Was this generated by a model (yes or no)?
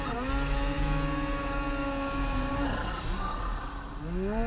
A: no